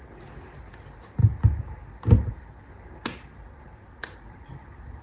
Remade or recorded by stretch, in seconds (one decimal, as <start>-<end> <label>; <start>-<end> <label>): 0.0-5.0 recorded